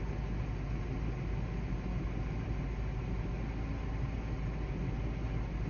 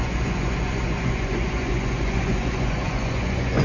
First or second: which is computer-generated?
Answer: second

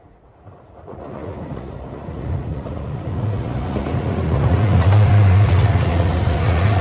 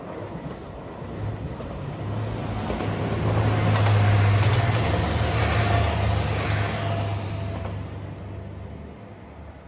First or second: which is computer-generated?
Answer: first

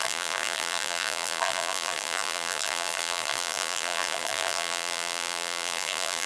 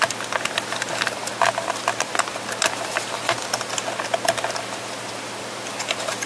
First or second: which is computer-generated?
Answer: first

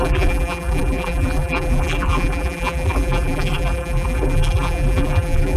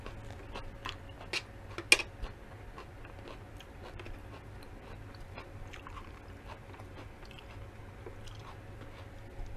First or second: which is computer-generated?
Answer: first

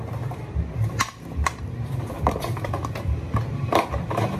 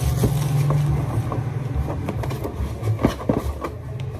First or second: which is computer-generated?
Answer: first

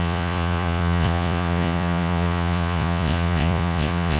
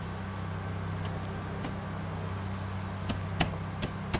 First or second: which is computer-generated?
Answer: first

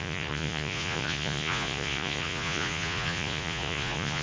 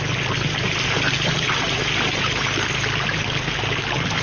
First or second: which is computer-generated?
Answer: first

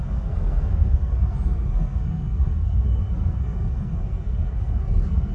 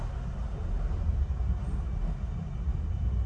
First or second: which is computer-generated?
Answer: first